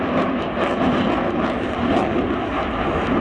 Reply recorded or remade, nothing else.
recorded